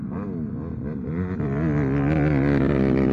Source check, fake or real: real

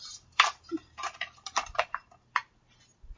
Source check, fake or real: fake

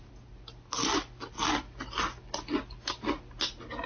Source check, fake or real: real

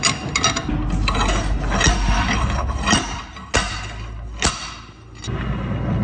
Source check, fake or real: real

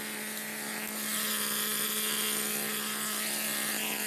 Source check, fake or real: real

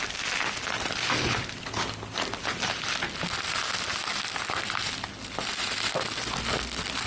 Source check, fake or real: real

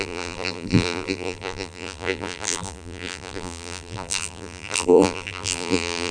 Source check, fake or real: fake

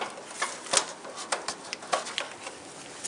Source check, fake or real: real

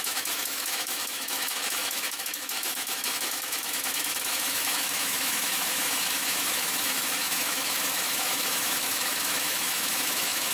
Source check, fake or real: fake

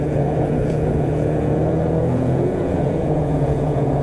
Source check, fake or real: fake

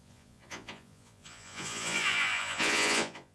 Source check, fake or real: fake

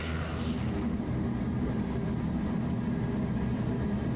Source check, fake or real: real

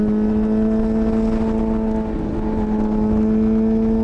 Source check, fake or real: real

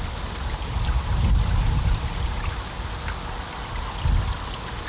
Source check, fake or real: real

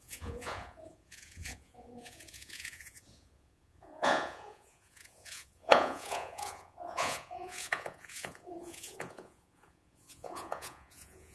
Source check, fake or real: fake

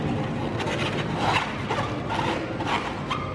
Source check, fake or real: real